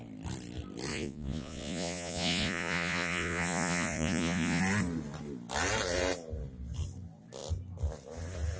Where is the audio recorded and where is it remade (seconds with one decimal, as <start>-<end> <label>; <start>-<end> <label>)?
0.0-0.9 recorded; 0.9-4.6 remade; 4.6-8.6 recorded